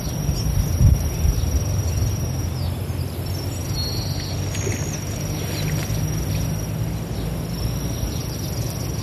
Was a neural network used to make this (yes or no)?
no